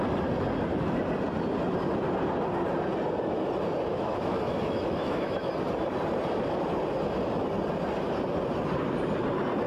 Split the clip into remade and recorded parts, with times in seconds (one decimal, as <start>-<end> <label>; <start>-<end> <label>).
0.0-3.9 recorded; 3.9-5.5 remade; 5.5-9.7 recorded